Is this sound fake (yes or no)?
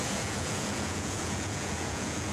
yes